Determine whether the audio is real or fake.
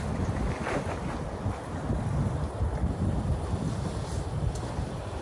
fake